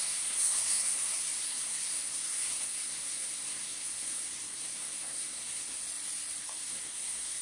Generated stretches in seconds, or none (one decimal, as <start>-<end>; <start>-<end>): 0.0-5.8; 6.4-7.4